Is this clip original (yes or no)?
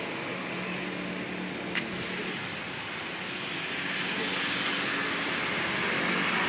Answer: yes